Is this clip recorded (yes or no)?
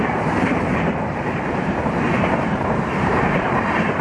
no